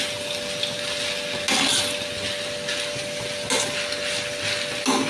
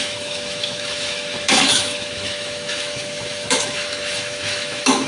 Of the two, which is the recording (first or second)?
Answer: first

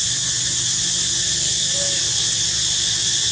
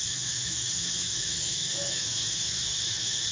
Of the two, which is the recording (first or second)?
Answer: first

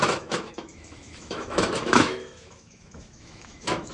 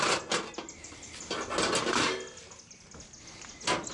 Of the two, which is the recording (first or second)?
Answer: second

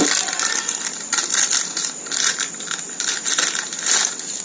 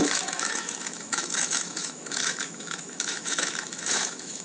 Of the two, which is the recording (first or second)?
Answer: first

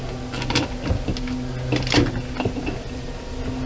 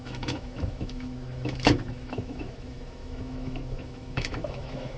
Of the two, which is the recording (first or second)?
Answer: first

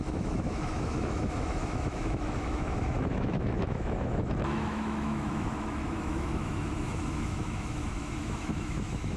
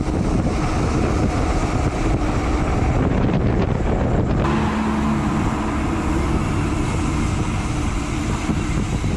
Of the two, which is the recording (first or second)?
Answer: second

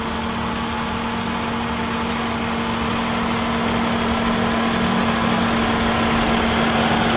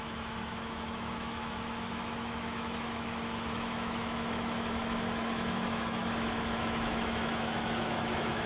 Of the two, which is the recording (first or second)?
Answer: first